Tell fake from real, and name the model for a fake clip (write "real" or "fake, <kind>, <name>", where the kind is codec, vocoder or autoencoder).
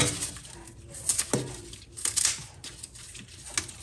real